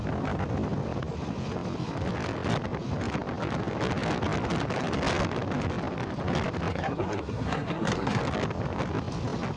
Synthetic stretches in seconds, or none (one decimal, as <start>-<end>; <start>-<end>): 6.7-8.2